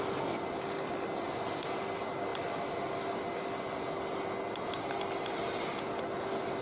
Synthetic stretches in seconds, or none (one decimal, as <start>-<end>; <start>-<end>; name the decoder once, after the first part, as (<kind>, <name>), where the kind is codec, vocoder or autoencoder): none